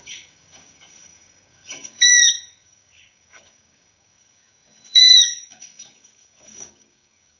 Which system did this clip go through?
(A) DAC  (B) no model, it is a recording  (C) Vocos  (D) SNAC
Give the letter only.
A